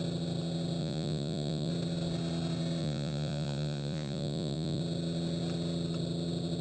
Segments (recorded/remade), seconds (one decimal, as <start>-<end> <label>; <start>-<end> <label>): 0.0-0.8 recorded; 0.8-1.7 remade; 1.7-2.8 recorded; 2.8-4.8 remade; 4.8-6.6 recorded